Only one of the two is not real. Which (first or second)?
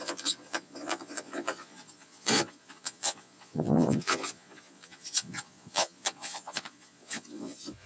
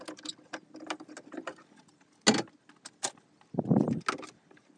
first